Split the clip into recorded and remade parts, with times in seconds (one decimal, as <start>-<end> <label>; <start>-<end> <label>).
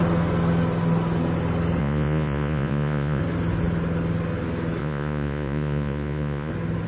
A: 0.0-1.8 recorded; 1.8-3.2 remade; 3.2-4.8 recorded; 4.8-6.5 remade; 6.5-6.9 recorded